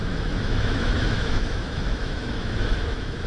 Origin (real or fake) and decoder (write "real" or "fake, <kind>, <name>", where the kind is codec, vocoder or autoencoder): fake, autoencoder, DAC-VAE